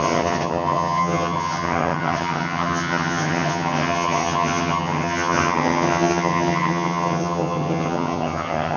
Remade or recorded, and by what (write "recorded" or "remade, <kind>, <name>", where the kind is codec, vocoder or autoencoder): remade, vocoder, HiFi-GAN